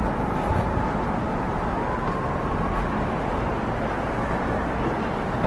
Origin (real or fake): real